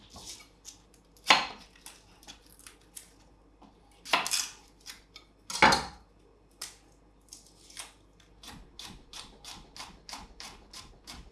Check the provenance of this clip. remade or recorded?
recorded